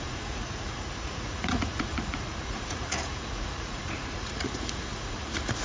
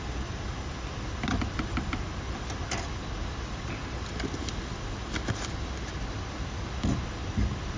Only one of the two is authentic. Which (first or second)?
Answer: second